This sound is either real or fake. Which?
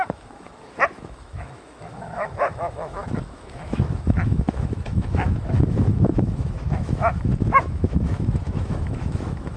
fake